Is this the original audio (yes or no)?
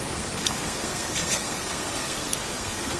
no